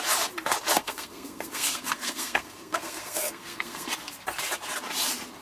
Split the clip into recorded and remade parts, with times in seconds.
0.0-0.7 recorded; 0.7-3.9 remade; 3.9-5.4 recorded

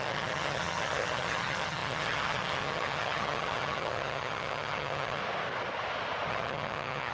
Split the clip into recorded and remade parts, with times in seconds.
0.0-5.2 remade; 5.2-6.3 recorded; 6.3-7.1 remade

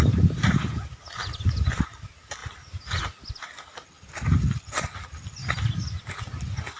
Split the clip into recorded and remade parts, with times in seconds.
0.0-6.8 recorded

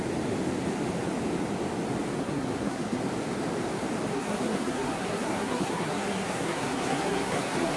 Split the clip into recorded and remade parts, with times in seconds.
0.0-2.2 recorded; 2.2-3.0 remade; 3.0-4.1 recorded; 4.1-7.8 remade

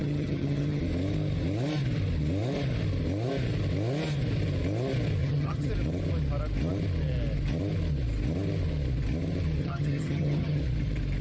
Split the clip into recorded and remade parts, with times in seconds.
0.0-0.8 remade; 0.8-5.2 recorded; 5.2-5.7 remade; 5.7-9.6 recorded; 9.6-10.6 remade; 10.6-11.2 recorded

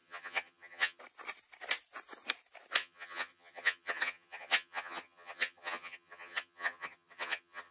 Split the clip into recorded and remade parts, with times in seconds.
0.0-1.0 remade; 1.0-2.8 recorded; 2.8-7.7 remade